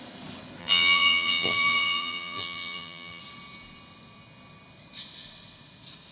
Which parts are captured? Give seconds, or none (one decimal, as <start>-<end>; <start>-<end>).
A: 0.0-0.6; 3.2-6.1